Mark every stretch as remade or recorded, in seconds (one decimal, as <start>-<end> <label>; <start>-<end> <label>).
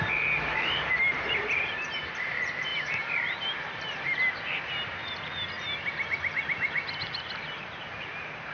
0.0-5.0 remade; 5.0-5.8 recorded; 5.8-8.5 remade